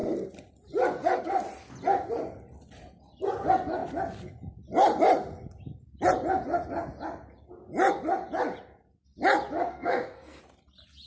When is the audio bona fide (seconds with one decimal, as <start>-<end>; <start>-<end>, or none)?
0.0-9.7; 10.4-11.1